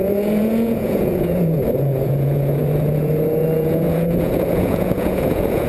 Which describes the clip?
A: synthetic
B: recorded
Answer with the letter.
A